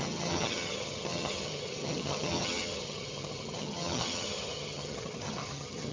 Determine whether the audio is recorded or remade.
remade